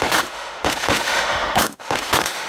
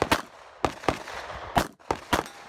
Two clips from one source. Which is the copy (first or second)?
first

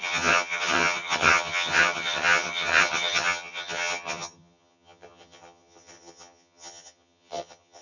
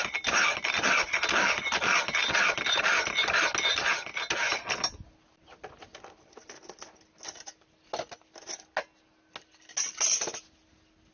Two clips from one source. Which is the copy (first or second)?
first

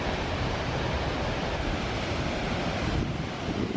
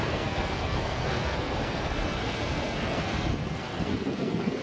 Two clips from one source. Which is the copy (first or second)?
second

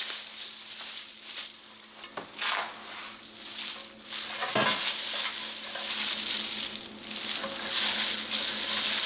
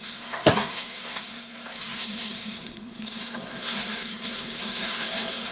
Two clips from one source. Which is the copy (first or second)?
second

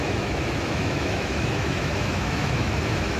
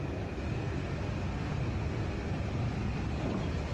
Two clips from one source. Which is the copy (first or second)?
first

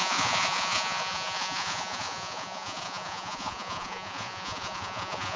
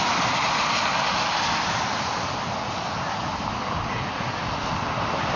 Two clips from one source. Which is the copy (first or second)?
first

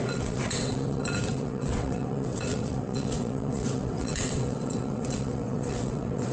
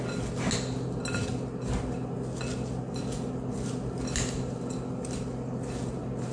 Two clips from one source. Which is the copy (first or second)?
first